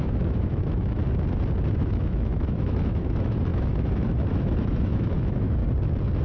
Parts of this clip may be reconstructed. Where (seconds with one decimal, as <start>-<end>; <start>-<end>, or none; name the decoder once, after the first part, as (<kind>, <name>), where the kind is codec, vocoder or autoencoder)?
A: 0.0-1.0 (autoencoder, DAC-VAE); 1.8-5.6